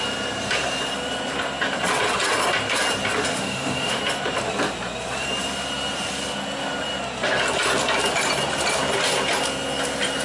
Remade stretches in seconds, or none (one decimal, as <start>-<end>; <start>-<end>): 3.3-4.0